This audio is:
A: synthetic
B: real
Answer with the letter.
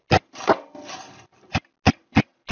B